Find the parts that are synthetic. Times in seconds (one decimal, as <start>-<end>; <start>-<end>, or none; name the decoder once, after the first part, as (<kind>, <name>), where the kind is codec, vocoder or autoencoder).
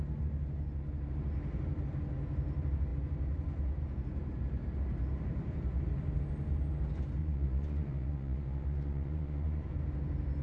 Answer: 7.2-9.7 (vocoder, Vocos)